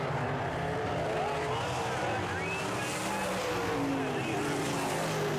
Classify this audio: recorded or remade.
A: recorded